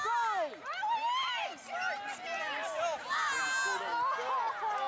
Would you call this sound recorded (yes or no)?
yes